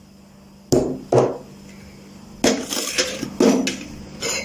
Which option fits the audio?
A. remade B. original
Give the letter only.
B